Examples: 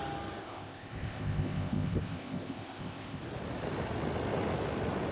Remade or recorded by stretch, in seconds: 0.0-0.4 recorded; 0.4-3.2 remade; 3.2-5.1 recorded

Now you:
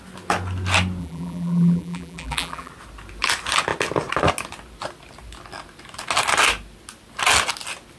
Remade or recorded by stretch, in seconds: 0.0-1.0 recorded; 1.0-2.7 remade; 2.7-8.0 recorded

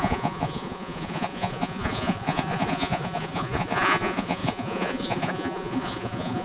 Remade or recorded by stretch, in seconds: 0.0-6.4 remade

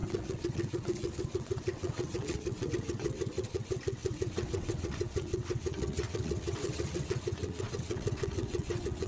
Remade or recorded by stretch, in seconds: 0.0-9.1 remade

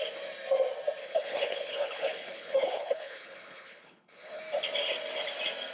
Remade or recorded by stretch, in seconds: 0.0-1.0 recorded; 1.0-4.4 remade; 4.4-5.7 recorded

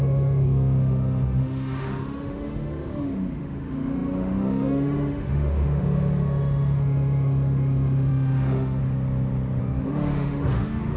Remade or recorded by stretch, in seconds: 0.0-8.8 remade; 8.8-9.6 recorded; 9.6-11.0 remade

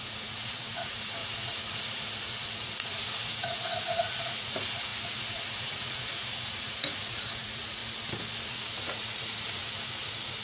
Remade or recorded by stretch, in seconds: 0.0-7.8 remade; 7.8-8.4 recorded; 8.4-10.4 remade